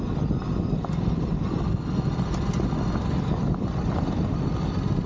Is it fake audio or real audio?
real